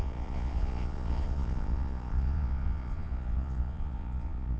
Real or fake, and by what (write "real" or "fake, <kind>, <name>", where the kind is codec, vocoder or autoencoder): fake, vocoder, Vocos